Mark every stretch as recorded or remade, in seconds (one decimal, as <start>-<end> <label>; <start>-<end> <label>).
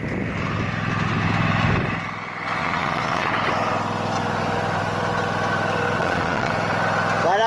0.0-2.6 recorded; 2.6-3.3 remade; 3.3-6.0 recorded; 6.0-6.5 remade; 6.5-7.5 recorded